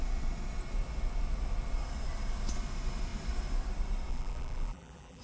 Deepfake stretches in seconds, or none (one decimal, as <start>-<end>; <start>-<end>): 4.1-5.2